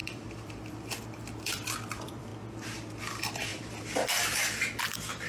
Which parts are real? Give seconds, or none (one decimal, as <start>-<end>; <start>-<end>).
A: 2.3-3.0

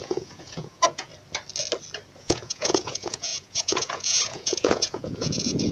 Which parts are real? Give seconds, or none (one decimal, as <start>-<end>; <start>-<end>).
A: 1.1-2.2

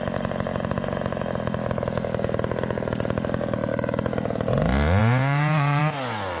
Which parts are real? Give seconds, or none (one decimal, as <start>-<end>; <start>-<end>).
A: 0.0-5.0; 5.8-6.4

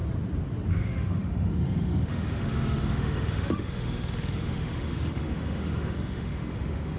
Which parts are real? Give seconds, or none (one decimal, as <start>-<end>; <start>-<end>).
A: 0.0-0.7

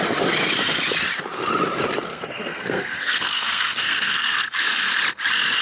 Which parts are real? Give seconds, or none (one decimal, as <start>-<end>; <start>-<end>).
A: 0.0-2.1; 4.8-5.6

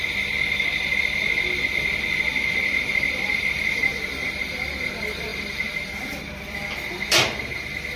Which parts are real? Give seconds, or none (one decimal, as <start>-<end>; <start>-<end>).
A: 0.0-2.3; 4.5-5.3; 6.4-8.0

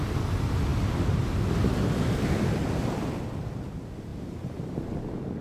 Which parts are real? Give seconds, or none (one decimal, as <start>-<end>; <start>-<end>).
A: 0.0-5.4